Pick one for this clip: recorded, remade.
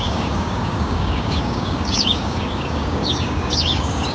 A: remade